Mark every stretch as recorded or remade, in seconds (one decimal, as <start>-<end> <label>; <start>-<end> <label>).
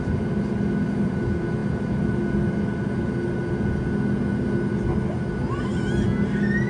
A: 0.0-6.7 recorded